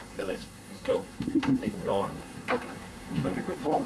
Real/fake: fake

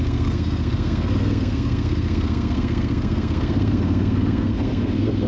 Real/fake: fake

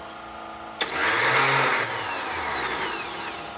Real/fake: real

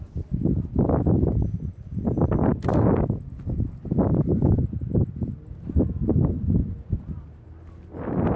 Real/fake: real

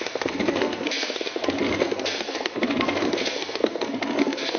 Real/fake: fake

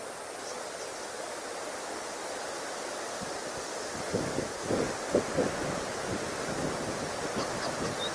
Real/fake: real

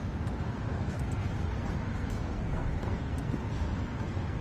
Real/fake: fake